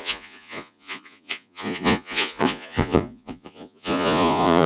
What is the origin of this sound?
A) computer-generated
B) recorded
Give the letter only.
A